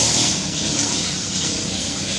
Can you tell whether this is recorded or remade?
remade